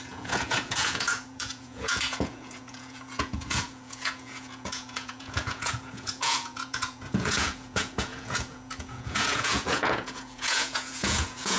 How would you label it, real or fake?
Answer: fake